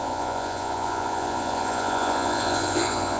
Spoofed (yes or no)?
yes